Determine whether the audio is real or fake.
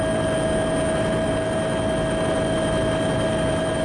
real